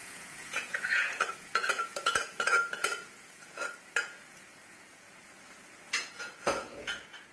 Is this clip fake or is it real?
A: fake